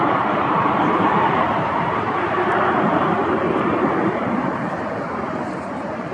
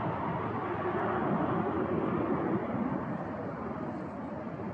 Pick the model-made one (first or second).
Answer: first